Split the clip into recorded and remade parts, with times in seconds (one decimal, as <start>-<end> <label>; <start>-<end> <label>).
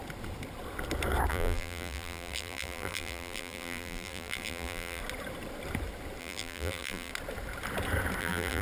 0.0-1.3 recorded; 1.3-5.0 remade; 5.0-6.2 recorded; 6.2-7.1 remade; 7.1-8.2 recorded; 8.2-8.6 remade